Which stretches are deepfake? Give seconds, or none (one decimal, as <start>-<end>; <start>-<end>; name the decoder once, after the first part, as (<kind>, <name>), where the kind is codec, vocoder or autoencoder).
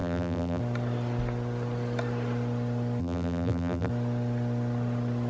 0.0-0.6 (vocoder, BigVGAN v2); 3.0-3.9